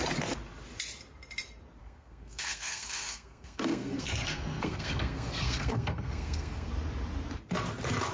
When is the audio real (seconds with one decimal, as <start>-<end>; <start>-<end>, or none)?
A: 0.0-1.8; 6.7-8.1